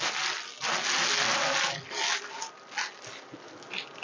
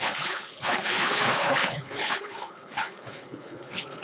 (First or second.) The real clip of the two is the first